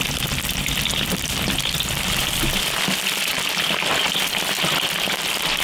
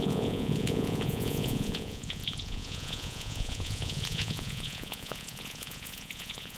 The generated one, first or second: second